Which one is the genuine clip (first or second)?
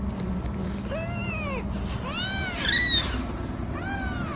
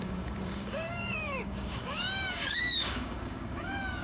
first